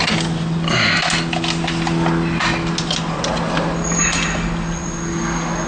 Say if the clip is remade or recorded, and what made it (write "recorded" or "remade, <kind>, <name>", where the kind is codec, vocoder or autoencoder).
recorded